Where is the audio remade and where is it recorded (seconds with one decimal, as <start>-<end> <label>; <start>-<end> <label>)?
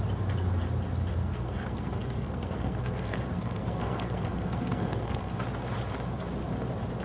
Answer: 0.0-1.1 recorded; 1.1-5.3 remade; 5.3-7.0 recorded